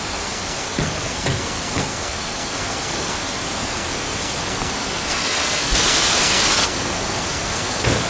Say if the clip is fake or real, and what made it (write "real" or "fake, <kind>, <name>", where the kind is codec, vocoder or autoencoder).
fake, codec, SNAC